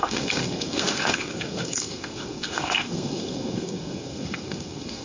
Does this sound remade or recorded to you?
remade